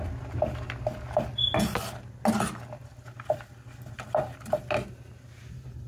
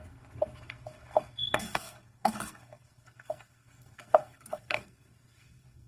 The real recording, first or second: first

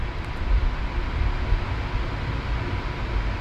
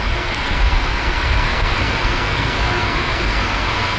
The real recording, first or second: first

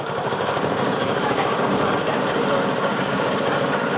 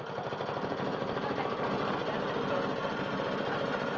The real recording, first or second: second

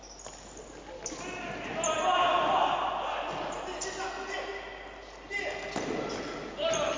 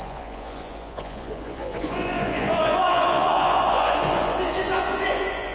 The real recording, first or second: first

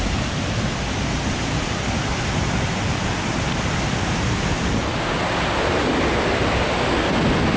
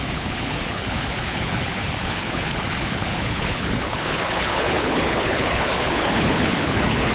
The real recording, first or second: first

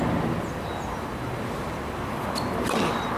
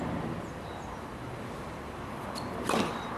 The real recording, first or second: first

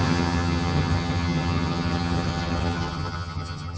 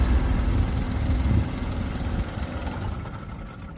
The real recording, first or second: second